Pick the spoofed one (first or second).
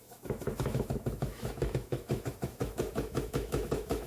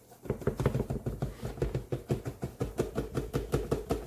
first